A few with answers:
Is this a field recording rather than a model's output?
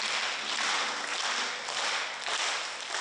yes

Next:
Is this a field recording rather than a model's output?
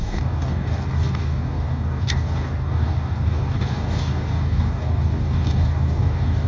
no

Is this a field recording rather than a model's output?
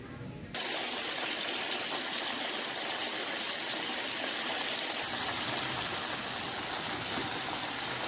yes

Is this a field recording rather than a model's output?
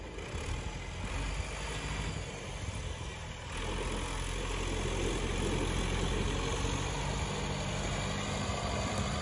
yes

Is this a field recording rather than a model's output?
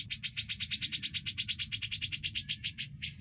yes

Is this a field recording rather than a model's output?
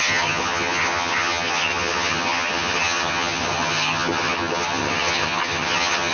no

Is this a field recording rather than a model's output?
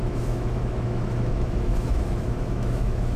no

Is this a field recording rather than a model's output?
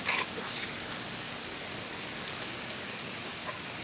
no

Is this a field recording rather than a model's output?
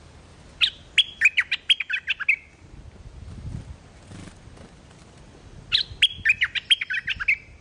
yes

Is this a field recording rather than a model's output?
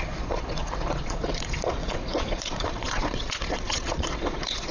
no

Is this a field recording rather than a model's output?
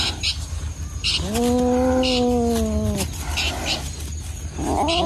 yes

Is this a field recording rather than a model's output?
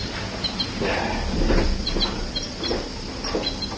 yes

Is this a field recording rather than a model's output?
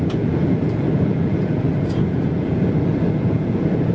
no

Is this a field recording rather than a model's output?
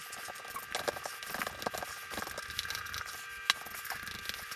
yes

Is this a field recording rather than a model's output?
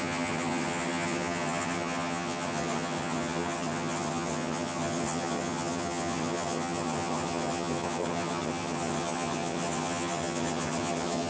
no